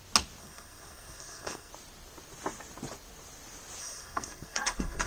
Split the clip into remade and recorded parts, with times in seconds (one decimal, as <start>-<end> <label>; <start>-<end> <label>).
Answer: 0.0-0.4 recorded; 0.4-1.7 remade; 1.7-3.8 recorded; 3.8-5.1 remade